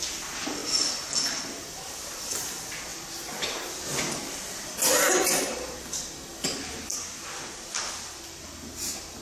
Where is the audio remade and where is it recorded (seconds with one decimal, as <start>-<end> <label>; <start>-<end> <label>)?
0.0-9.2 recorded